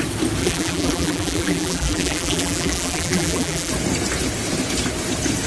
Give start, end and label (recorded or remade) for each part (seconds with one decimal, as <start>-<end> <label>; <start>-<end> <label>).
0.0-0.4 recorded; 0.4-3.7 remade; 3.7-5.5 recorded

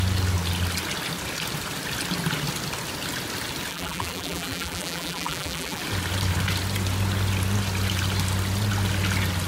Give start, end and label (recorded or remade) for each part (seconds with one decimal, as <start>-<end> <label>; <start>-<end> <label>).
0.0-3.7 recorded; 3.7-5.8 remade; 5.8-9.5 recorded

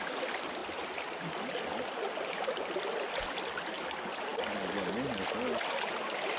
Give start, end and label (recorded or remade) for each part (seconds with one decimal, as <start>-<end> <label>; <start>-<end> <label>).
0.0-6.4 recorded